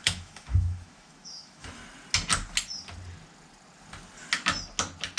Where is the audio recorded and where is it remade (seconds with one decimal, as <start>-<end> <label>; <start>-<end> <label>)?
0.0-1.8 remade; 1.8-5.2 recorded